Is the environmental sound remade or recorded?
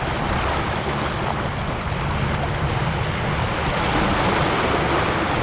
recorded